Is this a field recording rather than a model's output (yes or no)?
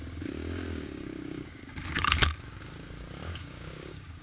no